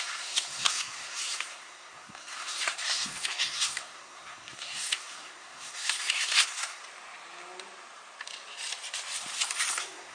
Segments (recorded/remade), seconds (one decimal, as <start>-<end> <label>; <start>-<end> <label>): 0.0-6.8 remade; 6.8-9.7 recorded; 9.7-10.1 remade